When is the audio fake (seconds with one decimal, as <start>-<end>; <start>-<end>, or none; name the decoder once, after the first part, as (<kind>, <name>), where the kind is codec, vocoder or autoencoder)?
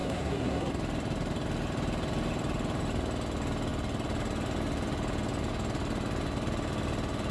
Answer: 0.0-0.7 (codec, SNAC)